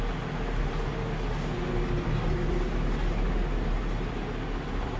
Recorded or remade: recorded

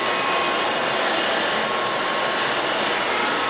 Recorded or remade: recorded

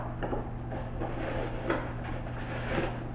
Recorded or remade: recorded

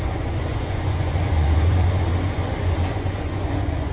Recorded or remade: remade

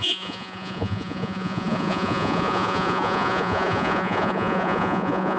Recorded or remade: remade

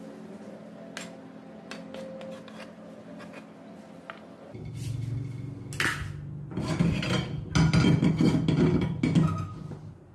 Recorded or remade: recorded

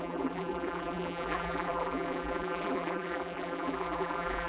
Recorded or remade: remade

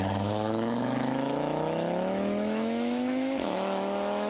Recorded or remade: remade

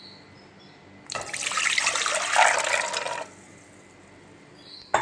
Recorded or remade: recorded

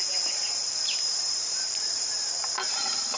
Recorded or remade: remade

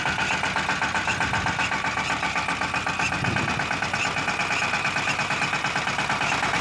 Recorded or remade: recorded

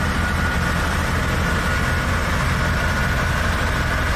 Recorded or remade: recorded